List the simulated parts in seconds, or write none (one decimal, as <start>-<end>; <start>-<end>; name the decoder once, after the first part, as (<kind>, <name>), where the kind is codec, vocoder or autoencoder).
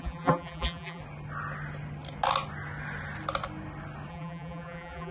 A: 0.0-1.0 (vocoder, BigVGAN v2); 4.1-5.1